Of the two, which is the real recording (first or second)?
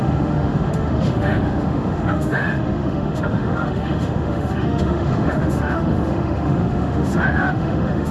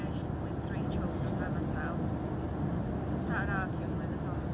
second